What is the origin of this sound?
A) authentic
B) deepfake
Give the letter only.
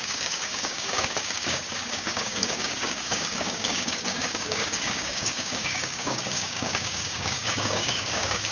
B